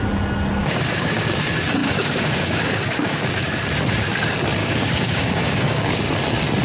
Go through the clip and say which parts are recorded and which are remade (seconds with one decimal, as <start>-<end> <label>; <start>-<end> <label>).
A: 0.0-0.6 recorded; 0.6-1.4 remade; 1.4-1.8 recorded; 1.8-3.5 remade; 3.5-4.6 recorded; 4.6-6.0 remade; 6.0-6.6 recorded

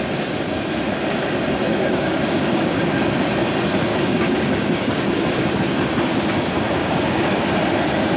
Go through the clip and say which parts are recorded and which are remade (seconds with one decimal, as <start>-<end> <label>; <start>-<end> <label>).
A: 0.0-1.7 recorded; 1.7-2.8 remade; 2.8-3.9 recorded; 3.9-5.5 remade; 5.5-6.8 recorded; 6.8-7.5 remade; 7.5-8.2 recorded

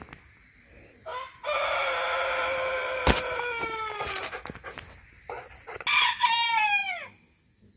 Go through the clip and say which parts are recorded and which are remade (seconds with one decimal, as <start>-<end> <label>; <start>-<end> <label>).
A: 0.0-7.8 recorded

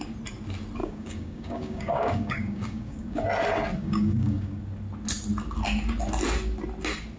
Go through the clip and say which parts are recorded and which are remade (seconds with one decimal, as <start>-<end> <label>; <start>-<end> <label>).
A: 0.0-0.8 recorded; 0.8-3.2 remade; 3.2-3.8 recorded; 3.8-4.6 remade; 4.6-7.2 recorded